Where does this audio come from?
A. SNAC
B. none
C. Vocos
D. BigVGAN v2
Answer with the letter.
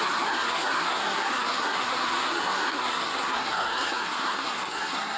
A